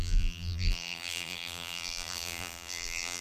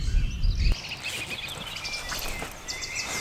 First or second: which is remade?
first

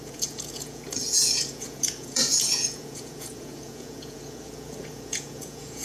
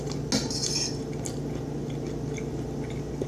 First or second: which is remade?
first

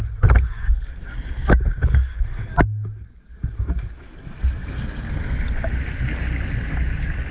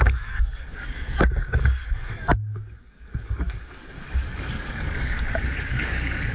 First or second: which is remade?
second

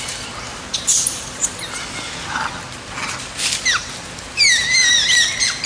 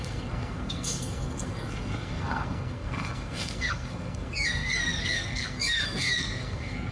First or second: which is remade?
second